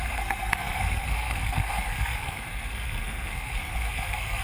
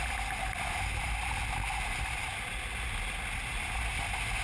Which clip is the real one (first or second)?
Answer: second